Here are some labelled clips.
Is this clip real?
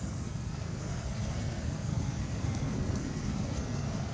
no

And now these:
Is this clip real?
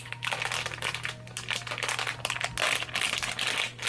yes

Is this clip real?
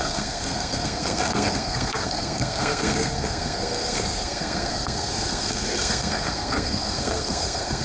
no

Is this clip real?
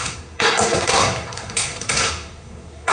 no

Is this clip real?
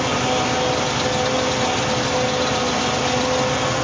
yes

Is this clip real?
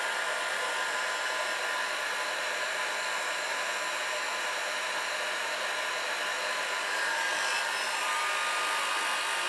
yes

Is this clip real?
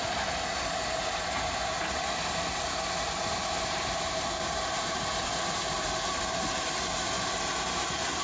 yes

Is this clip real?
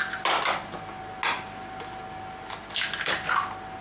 yes